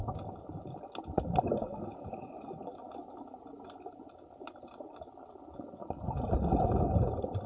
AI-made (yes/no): no